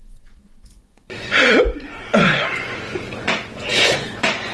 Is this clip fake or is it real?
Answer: fake